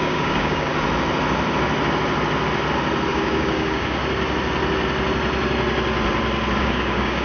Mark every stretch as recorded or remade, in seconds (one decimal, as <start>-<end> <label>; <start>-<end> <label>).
0.0-0.7 remade; 0.7-3.1 recorded; 3.1-4.0 remade; 4.0-6.6 recorded; 6.6-7.2 remade